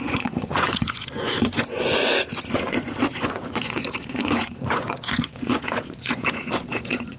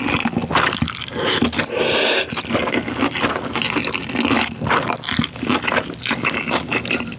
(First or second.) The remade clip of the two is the first